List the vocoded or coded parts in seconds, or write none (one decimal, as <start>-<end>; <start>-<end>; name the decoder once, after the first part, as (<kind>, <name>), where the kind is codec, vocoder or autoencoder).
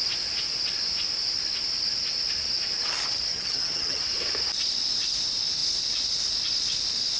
3.3-4.0 (vocoder, HiFi-GAN)